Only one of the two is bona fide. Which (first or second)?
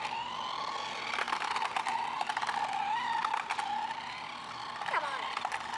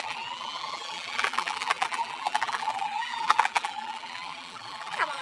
first